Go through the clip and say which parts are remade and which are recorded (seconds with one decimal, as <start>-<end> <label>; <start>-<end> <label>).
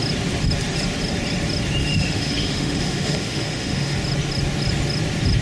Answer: 0.0-1.8 recorded; 1.8-4.0 remade; 4.0-5.4 recorded